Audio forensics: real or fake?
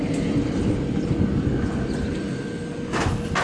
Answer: real